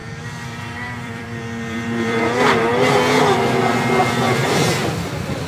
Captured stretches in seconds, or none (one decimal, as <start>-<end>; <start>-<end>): 2.2-4.4